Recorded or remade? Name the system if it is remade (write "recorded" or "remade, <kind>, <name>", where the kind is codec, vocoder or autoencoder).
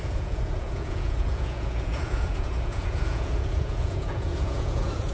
remade, vocoder, Vocos